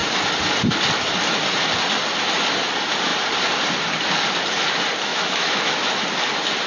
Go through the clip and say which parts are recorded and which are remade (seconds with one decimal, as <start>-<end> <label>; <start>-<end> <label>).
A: 0.0-5.1 recorded; 5.1-5.7 remade; 5.7-6.7 recorded